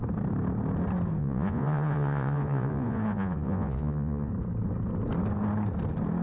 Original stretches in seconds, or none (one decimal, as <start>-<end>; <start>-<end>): 0.0-1.2; 4.3-6.2